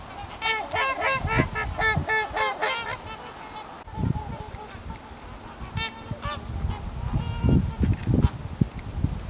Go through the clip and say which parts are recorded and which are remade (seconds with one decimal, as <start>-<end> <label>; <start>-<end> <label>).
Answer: 0.0-9.3 recorded